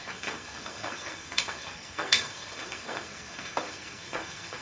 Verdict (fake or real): fake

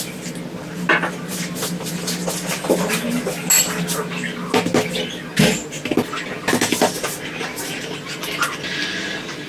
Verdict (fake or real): real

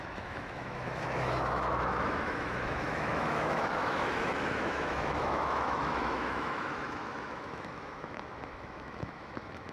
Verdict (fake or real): fake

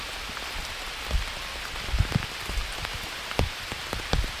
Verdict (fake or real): real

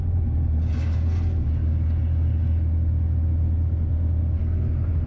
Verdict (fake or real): real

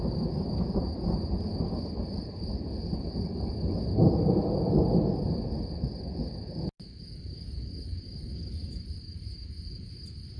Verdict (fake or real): real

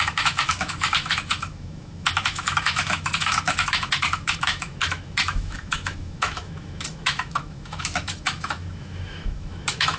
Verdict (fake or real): fake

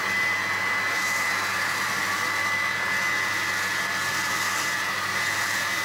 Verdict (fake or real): real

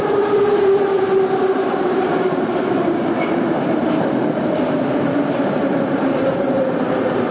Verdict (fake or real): fake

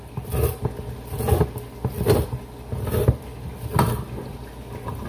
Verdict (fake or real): real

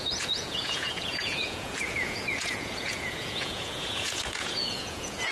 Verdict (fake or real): fake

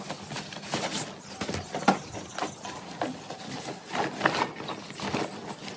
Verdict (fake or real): real